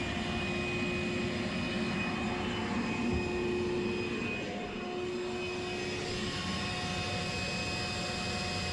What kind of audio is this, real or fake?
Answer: real